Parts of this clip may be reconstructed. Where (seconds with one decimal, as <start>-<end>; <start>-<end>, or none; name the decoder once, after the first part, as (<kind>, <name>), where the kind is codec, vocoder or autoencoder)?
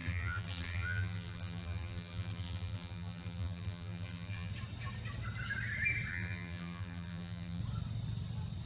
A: 0.0-4.5 (vocoder, BigVGAN v2); 6.1-7.6